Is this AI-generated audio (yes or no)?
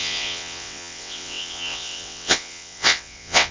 yes